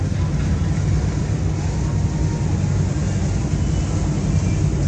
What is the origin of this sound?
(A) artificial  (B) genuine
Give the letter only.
B